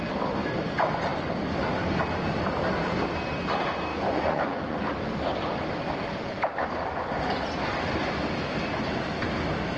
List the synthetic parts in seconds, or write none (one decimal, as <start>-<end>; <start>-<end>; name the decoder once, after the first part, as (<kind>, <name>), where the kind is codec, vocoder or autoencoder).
3.9-4.8 (vocoder, Vocos)